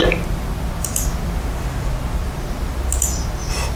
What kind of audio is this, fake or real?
real